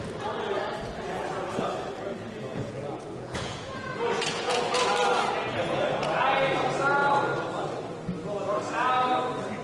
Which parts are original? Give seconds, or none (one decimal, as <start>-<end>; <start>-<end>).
0.0-2.5; 4.9-5.6; 6.6-9.6